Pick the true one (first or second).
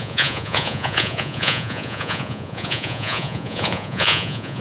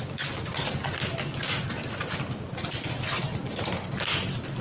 second